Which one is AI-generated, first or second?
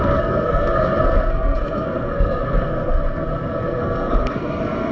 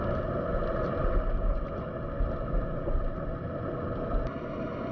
first